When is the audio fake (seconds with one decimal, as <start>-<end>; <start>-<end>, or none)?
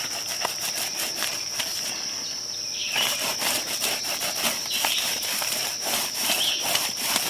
0.9-1.8; 2.8-7.3